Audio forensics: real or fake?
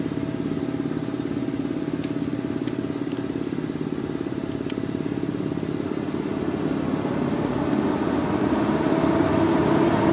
real